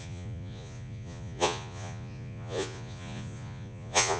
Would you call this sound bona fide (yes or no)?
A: no